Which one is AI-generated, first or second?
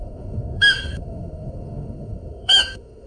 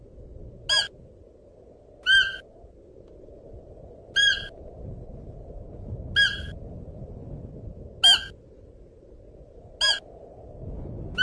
first